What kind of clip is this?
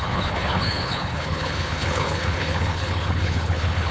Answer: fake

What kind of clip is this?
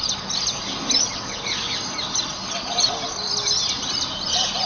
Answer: real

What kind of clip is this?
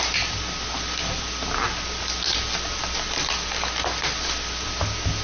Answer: real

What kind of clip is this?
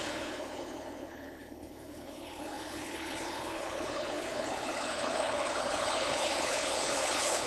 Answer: fake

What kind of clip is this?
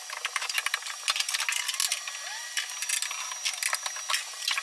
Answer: real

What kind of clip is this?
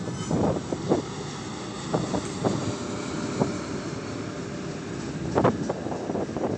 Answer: real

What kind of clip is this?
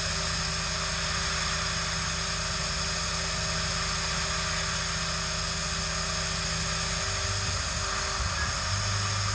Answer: real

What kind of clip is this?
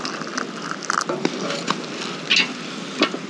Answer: real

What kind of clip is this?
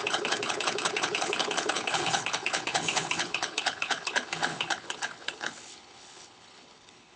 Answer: fake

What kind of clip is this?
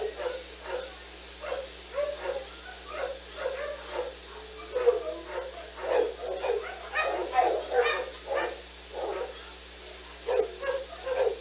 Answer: real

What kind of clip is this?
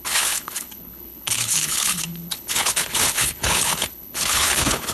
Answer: fake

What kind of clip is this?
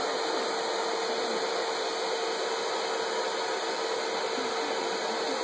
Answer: real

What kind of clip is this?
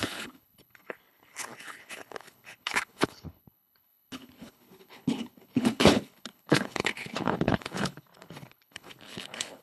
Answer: fake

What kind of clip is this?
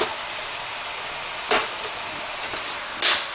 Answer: real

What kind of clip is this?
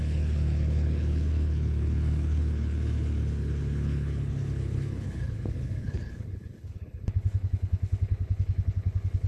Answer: fake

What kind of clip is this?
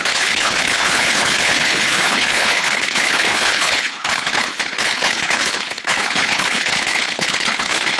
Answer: fake